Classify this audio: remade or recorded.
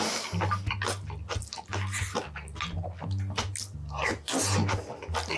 recorded